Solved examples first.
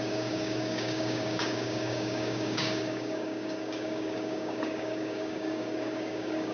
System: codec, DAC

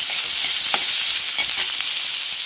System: none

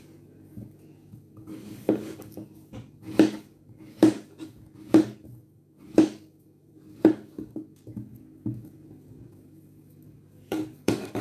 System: codec, DAC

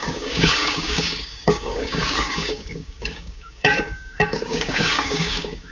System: codec, DAC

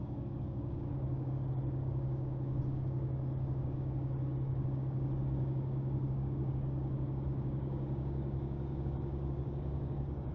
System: codec, DAC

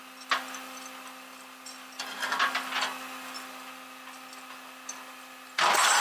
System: none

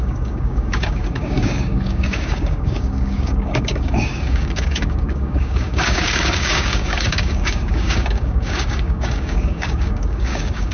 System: codec, DAC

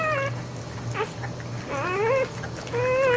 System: none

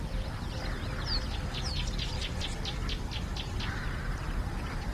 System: none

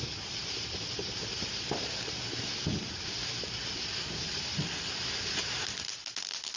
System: none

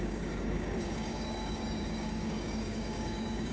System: codec, DAC